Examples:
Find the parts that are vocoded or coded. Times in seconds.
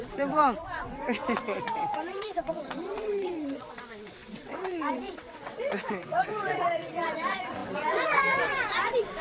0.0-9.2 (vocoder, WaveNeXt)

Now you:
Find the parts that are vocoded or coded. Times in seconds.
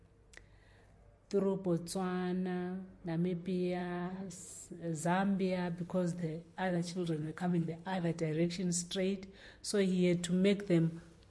3.8-4.4 (codec, HILCodec); 6.2-8.5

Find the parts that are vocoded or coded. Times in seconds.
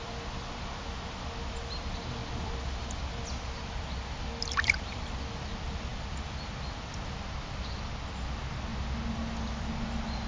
2.2-5.2 (vocoder, BigVGAN v2); 5.9-6.6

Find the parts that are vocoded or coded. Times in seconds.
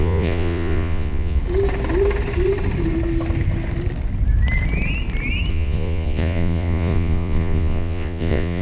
0.0-1.4 (vocoder, Vocos); 5.5-8.6